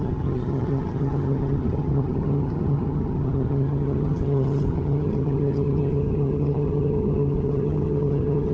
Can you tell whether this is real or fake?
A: fake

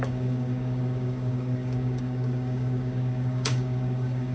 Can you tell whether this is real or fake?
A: fake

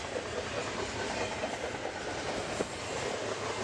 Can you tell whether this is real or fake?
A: real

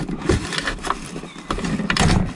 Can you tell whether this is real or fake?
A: real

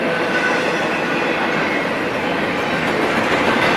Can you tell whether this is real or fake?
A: real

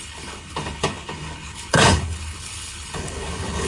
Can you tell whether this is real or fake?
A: fake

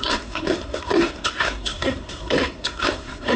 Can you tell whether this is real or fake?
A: fake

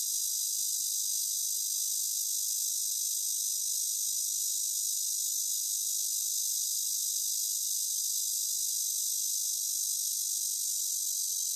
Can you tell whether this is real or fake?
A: real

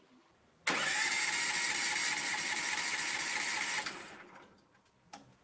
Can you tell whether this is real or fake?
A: real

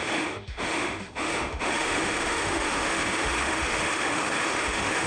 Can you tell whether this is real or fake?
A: fake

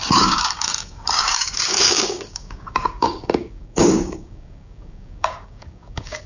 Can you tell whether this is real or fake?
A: fake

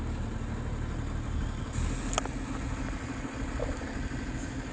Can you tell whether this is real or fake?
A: real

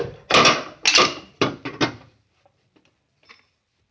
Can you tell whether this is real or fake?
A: real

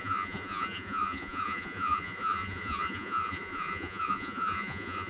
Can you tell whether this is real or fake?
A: fake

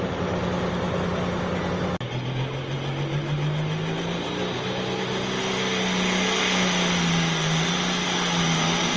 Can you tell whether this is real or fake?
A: real